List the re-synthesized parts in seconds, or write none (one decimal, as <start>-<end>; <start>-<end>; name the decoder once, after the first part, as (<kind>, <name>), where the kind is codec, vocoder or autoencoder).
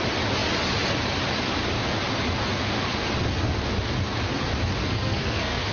4.8-5.7 (codec, SNAC)